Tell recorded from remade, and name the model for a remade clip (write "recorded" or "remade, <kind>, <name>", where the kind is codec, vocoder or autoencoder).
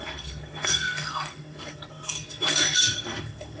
remade, codec, SNAC